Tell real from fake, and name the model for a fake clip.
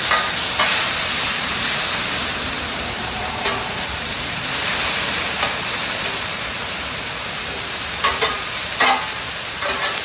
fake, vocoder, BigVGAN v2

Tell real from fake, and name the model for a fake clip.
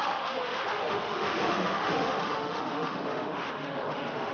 fake, autoencoder, DAC-VAE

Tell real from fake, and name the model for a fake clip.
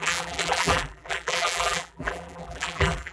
fake, vocoder, BigVGAN v2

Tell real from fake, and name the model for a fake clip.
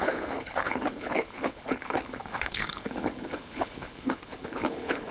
fake, codec, HILCodec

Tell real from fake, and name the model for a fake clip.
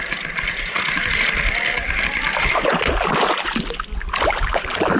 real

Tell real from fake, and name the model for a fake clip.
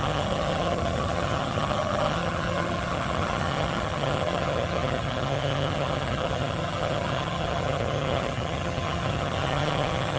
fake, vocoder, HiFi-GAN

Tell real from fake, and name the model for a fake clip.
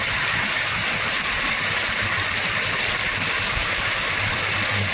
real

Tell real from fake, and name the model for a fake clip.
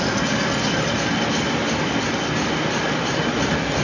real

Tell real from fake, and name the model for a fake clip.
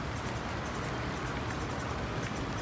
real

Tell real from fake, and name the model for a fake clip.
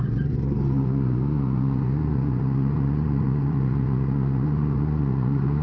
fake, vocoder, Vocos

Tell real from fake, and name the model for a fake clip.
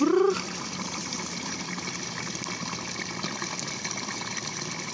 real